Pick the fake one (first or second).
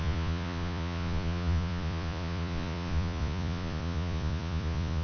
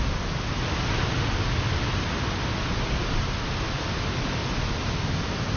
first